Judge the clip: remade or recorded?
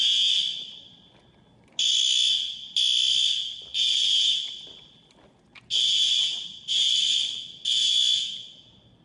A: recorded